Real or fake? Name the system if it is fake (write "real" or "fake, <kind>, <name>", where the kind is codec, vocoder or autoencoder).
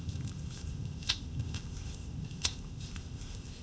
fake, codec, ZipCodec